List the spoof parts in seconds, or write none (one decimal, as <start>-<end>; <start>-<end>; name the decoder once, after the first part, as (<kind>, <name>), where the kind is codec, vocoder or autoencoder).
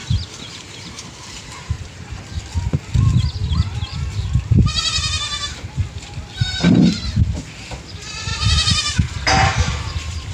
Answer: 0.0-2.4 (vocoder, BigVGAN v2); 8.3-10.3